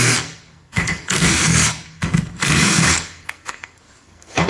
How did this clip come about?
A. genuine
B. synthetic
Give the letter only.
B